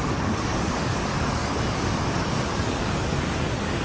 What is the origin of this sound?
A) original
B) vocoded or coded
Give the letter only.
B